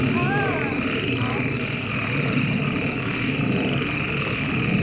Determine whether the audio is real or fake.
real